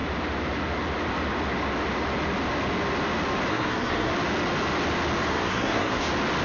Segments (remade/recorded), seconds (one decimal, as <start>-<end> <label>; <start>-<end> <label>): 0.0-3.5 recorded; 3.5-4.1 remade; 4.1-5.3 recorded; 5.3-6.0 remade; 6.0-6.4 recorded

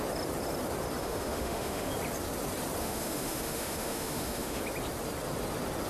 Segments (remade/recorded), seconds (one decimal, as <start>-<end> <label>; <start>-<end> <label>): 0.0-1.0 recorded; 1.0-1.9 remade; 1.9-2.8 recorded; 2.8-4.6 remade; 4.6-5.9 recorded

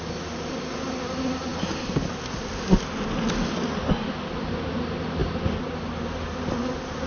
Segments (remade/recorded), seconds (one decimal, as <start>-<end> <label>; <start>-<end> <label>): 0.0-7.1 recorded

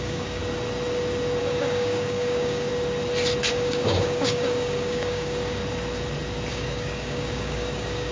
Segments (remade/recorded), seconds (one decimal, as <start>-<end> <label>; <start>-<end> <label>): 0.0-0.4 remade; 0.4-1.4 recorded; 1.4-2.7 remade; 2.7-3.5 recorded; 3.5-5.6 remade; 5.6-6.5 recorded; 6.5-8.1 remade

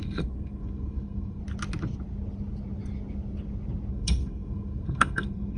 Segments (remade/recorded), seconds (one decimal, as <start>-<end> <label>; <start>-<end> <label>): 0.0-1.4 remade; 1.4-3.9 recorded; 3.9-5.6 remade

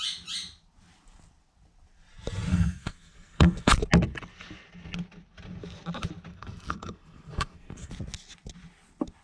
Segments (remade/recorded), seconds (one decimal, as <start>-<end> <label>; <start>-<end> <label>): 0.0-2.5 recorded; 2.5-3.7 remade; 3.7-6.3 recorded; 6.3-7.9 remade; 7.9-9.2 recorded

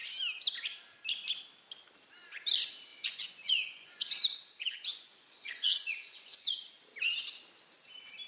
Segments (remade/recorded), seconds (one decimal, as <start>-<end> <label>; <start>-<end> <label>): 0.0-2.9 recorded; 2.9-4.1 remade; 4.1-4.6 recorded; 4.6-6.7 remade; 6.7-8.3 recorded